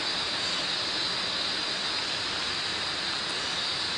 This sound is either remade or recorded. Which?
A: recorded